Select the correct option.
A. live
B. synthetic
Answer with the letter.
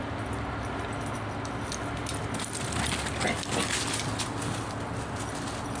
A